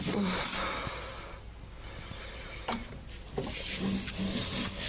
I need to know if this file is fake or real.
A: real